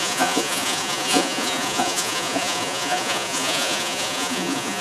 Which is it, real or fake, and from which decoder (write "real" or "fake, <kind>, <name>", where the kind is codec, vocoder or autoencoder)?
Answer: fake, vocoder, Vocos